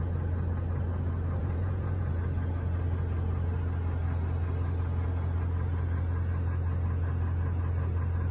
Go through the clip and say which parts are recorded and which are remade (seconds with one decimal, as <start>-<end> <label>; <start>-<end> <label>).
0.0-1.4 recorded; 1.4-2.1 remade; 2.1-8.3 recorded